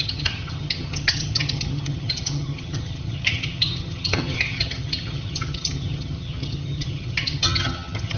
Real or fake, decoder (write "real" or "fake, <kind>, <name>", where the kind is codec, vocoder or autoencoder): fake, vocoder, HiFi-GAN